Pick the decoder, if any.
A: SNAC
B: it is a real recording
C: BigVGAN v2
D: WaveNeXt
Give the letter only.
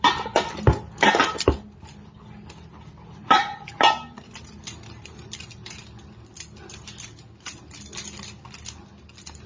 C